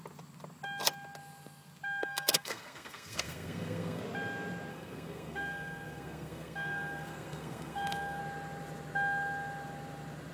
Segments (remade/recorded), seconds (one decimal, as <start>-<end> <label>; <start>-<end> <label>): 0.0-2.0 recorded; 2.0-4.0 remade; 4.0-4.7 recorded; 4.7-8.2 remade; 8.2-10.3 recorded